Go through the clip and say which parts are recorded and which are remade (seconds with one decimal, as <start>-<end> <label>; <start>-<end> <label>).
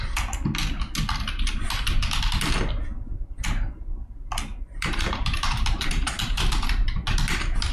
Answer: 0.0-4.5 recorded; 4.5-7.0 remade; 7.0-7.7 recorded